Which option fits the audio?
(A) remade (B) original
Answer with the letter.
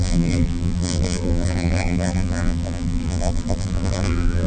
A